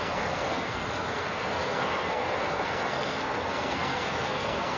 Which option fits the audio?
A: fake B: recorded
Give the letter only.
A